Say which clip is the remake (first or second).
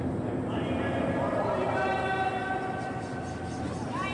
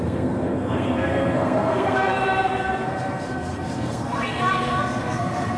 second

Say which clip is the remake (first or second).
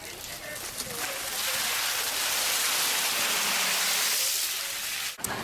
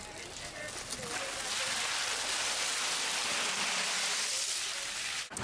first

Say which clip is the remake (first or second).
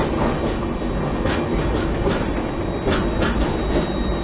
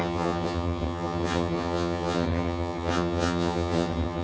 second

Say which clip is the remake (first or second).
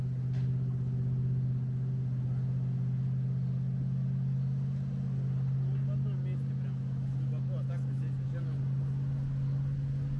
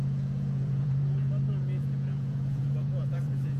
second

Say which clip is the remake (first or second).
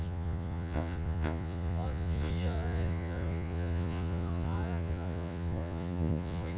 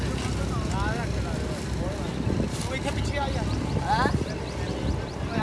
first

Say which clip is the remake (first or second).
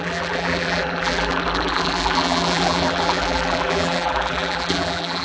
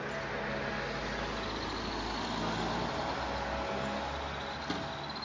first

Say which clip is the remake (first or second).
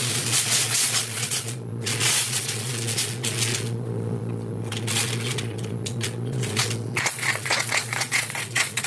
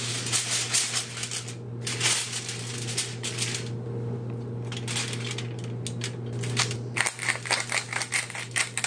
first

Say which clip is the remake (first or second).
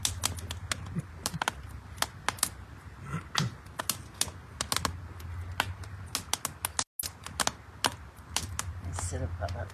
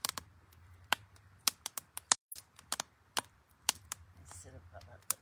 second